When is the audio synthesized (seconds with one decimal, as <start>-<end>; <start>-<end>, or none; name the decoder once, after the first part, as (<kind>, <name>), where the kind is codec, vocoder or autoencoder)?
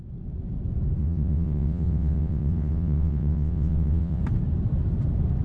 1.0-4.2 (vocoder, WaveNeXt)